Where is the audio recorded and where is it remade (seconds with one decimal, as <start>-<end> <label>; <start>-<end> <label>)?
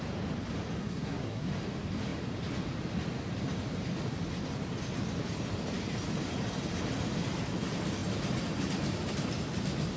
0.0-0.8 recorded; 0.8-1.5 remade; 1.5-10.0 recorded